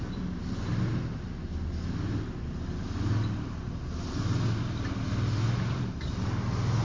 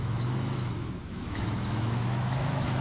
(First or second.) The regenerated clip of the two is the second